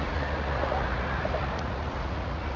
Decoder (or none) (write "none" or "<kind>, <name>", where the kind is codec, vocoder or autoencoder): vocoder, Vocos